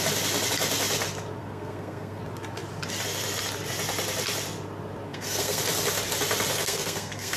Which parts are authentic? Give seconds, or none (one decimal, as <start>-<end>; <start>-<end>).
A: 0.0-1.4; 2.2-5.1; 5.6-6.5